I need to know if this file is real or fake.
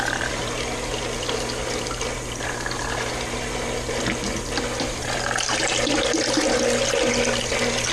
real